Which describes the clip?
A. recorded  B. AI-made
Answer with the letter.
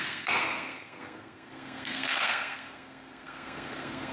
B